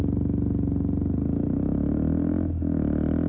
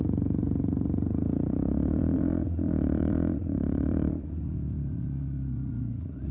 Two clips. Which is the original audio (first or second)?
first